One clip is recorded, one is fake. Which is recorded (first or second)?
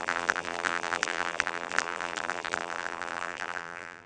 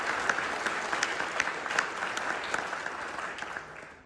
second